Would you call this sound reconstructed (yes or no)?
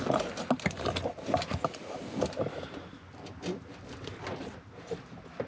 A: no